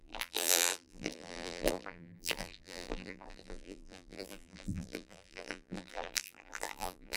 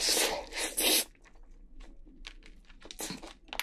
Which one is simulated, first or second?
first